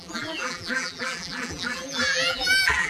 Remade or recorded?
remade